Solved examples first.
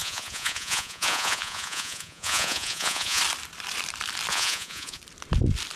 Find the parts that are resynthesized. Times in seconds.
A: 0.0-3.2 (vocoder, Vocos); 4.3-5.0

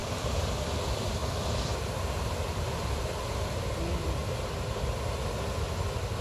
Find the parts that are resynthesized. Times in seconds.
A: 0.0-4.2 (vocoder, BigVGAN v2); 5.7-6.2

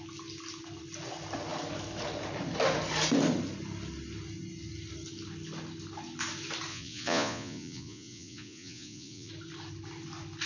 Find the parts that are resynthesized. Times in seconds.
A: 6.7-9.3 (vocoder, Vocos)

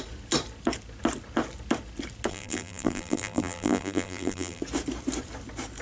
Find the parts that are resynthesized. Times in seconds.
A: 2.3-4.6 (vocoder, BigVGAN v2)